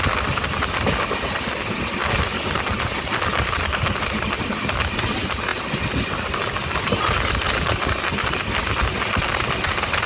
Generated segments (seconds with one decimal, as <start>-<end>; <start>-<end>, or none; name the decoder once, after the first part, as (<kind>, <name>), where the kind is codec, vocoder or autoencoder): none